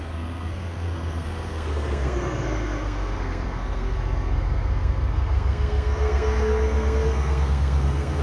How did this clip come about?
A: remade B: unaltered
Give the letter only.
A